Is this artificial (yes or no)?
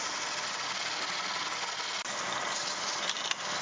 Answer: no